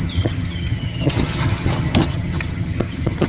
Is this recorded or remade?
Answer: remade